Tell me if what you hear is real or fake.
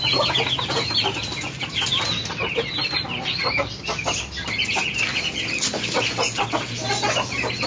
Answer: real